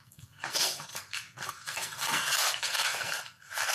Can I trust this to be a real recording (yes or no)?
no